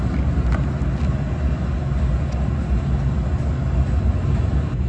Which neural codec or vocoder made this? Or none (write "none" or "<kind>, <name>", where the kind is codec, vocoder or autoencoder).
none